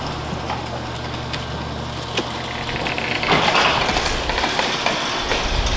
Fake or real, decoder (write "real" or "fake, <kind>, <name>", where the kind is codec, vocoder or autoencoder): real